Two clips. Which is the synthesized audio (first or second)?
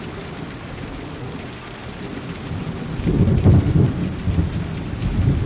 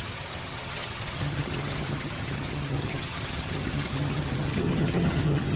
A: second